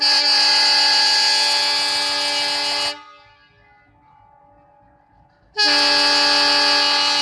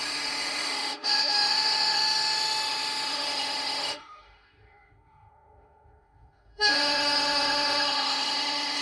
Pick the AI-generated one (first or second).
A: second